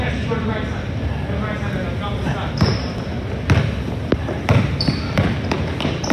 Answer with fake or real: real